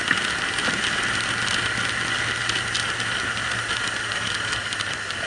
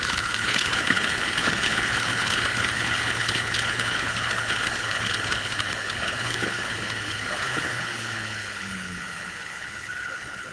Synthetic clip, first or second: second